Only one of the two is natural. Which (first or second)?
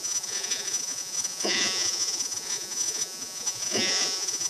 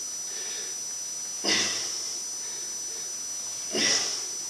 second